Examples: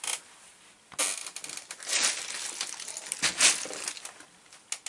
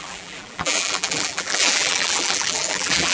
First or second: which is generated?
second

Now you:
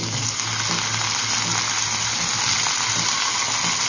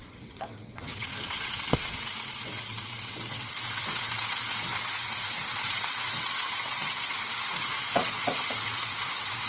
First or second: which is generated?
second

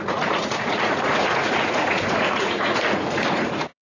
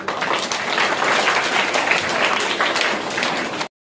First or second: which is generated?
first